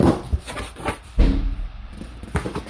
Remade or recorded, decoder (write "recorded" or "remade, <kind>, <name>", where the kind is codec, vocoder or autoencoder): remade, vocoder, BigVGAN v2